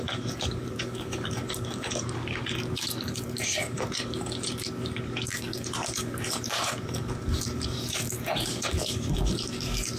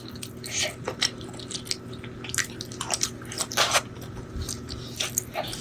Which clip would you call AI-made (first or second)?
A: first